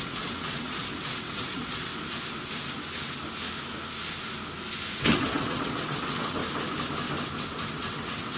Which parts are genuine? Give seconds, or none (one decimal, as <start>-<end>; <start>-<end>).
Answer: 1.9-5.0; 6.4-7.4